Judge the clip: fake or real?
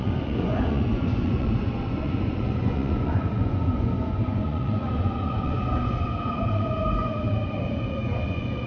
fake